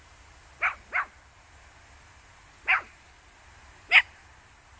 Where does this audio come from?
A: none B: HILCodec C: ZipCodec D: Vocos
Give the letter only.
A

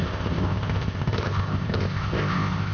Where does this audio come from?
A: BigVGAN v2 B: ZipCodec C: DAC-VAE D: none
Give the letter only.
B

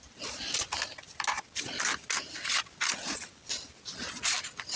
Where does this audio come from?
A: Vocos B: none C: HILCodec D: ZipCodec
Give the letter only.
B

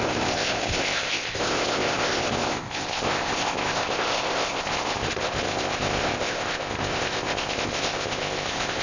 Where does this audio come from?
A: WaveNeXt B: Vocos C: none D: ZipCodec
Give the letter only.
D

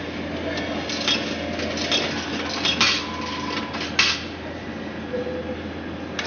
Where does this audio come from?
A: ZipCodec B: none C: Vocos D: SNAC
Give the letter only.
B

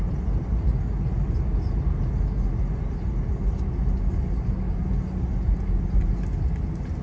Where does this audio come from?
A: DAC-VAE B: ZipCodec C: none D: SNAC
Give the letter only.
C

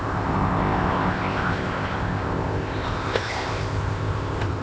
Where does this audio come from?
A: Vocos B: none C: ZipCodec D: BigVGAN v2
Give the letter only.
C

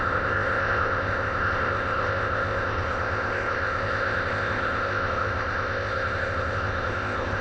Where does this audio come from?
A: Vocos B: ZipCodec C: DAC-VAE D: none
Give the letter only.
B